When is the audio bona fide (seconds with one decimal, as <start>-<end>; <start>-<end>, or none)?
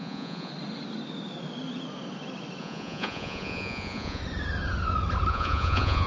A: 0.5-2.6; 4.2-5.3